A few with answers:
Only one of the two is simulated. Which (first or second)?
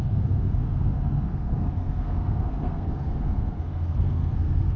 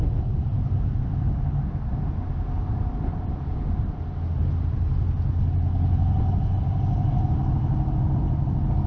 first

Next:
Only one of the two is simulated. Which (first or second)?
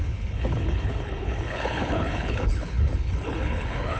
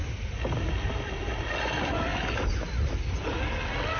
first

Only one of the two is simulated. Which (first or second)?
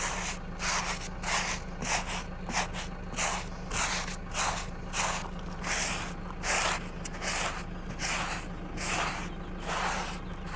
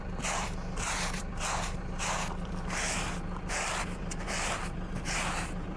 second